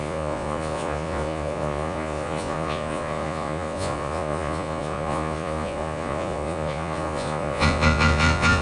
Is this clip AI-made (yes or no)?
yes